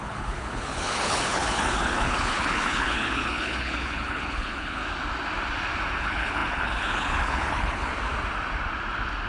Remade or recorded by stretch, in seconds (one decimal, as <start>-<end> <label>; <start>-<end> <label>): 0.0-4.8 remade; 4.8-6.0 recorded; 6.0-7.9 remade; 7.9-9.3 recorded